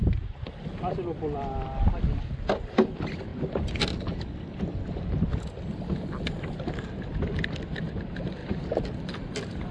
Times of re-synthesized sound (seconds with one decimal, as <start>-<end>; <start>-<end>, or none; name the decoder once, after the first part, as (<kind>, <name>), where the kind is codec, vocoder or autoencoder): none